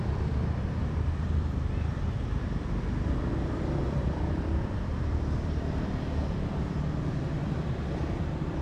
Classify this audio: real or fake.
fake